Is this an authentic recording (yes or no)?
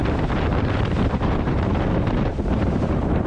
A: no